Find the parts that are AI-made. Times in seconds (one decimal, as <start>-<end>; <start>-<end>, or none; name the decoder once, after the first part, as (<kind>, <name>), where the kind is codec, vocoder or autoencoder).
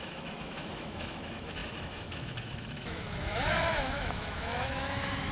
0.0-5.3 (autoencoder, DAC-VAE)